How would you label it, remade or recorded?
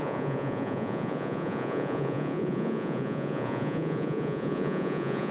remade